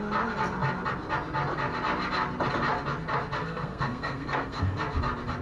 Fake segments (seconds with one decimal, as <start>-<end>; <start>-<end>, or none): 3.4-4.8